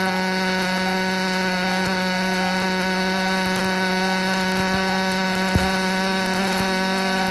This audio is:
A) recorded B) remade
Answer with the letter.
A